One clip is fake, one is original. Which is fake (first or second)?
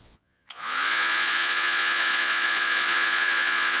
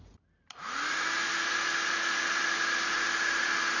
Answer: first